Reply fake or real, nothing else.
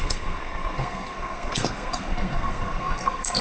fake